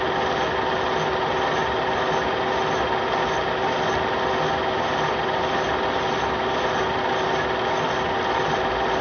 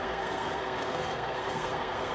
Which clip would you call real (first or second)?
first